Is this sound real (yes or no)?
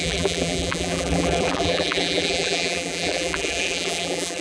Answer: no